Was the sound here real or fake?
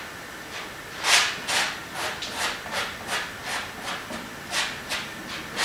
real